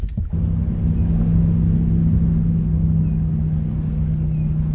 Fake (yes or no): no